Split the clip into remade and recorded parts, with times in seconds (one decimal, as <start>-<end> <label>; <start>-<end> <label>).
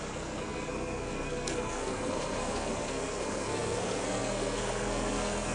0.0-5.5 remade